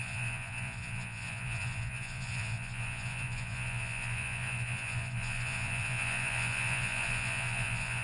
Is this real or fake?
fake